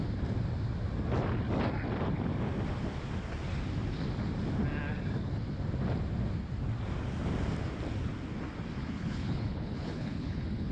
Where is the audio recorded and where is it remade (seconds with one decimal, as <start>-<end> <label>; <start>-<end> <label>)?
0.0-8.8 recorded; 8.8-10.7 remade

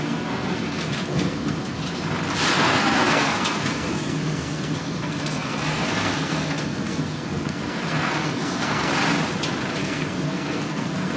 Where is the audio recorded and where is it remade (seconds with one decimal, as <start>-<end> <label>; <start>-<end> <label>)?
0.0-1.8 remade; 1.8-2.5 recorded; 2.5-8.9 remade; 8.9-9.7 recorded; 9.7-11.2 remade